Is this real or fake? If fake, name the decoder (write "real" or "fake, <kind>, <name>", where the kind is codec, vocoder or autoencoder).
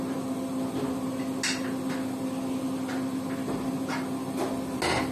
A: real